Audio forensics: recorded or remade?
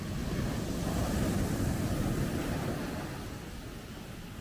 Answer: recorded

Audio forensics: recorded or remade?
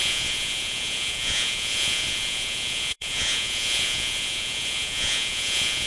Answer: remade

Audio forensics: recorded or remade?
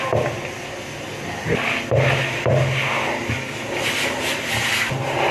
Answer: recorded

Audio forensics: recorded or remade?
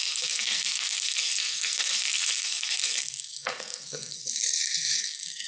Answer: remade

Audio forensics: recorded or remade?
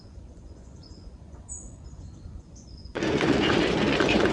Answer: remade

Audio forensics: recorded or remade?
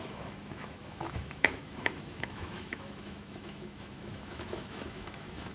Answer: remade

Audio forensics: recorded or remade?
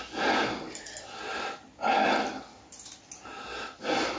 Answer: recorded